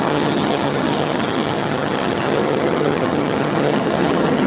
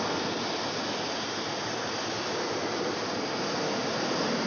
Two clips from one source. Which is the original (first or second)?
second